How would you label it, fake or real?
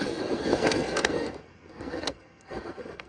fake